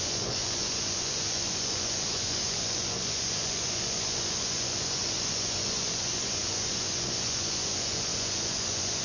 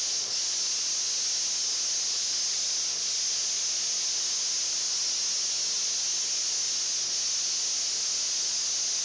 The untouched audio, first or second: second